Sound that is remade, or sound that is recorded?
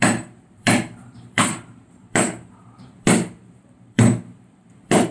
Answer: remade